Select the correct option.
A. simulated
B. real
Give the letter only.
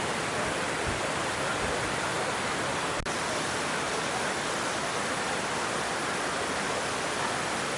B